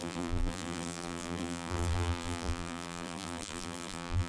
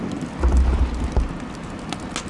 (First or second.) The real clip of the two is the second